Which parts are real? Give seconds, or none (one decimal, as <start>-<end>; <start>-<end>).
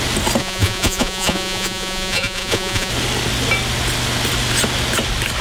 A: 0.0-0.4; 2.9-5.4